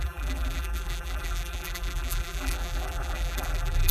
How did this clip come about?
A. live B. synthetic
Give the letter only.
B